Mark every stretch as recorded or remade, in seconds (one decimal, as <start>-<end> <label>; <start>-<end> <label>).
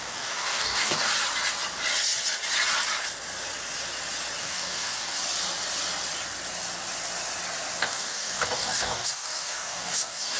0.0-1.1 remade; 1.1-4.4 recorded; 4.4-5.2 remade; 5.2-7.8 recorded; 7.8-10.4 remade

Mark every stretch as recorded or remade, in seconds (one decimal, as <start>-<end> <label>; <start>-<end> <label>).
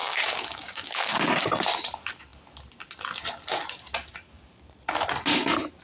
0.0-1.3 remade; 1.3-5.8 recorded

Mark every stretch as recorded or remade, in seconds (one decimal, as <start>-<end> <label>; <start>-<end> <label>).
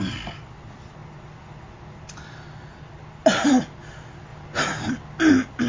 0.0-5.7 recorded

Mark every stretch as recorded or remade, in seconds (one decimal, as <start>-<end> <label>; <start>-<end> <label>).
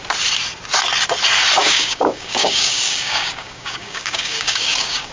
0.0-1.6 recorded; 1.6-5.1 remade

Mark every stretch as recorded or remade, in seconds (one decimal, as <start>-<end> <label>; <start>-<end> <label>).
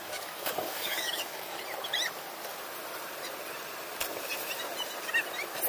0.0-1.6 remade; 1.6-5.7 recorded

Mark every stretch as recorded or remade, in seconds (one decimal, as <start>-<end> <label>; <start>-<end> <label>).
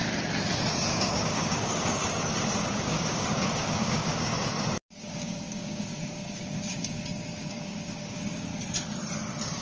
0.0-0.9 recorded; 0.9-2.0 remade; 2.0-2.6 recorded; 2.6-4.3 remade; 4.3-4.8 recorded; 4.8-8.5 remade; 8.5-9.6 recorded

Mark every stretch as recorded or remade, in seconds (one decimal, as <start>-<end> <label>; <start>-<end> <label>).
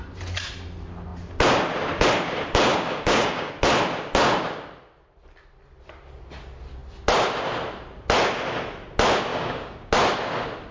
0.0-2.7 recorded; 2.7-3.5 remade; 3.5-9.3 recorded; 9.3-9.9 remade; 9.9-10.7 recorded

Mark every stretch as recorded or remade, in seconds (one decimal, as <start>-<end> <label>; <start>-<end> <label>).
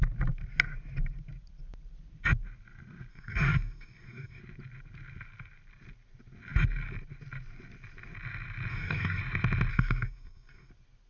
0.0-3.1 recorded; 3.1-4.4 remade; 4.4-8.7 recorded; 8.7-9.2 remade; 9.2-9.7 recorded; 9.7-10.7 remade; 10.7-11.1 recorded